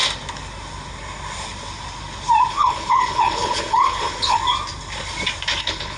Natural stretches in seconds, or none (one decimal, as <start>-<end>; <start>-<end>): 0.0-2.5; 4.4-5.6